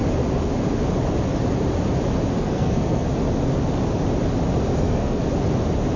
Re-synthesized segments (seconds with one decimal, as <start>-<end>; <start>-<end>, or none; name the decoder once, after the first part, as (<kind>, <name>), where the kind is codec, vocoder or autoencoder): 2.4-3.1 (codec, SNAC); 4.7-5.2